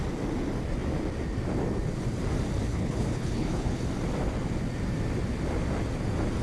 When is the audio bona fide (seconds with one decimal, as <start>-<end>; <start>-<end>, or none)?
0.0-2.7; 3.8-6.4